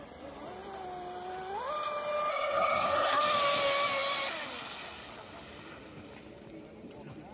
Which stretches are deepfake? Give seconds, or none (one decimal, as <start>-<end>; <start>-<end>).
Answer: 2.3-3.2